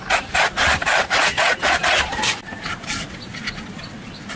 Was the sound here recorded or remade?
recorded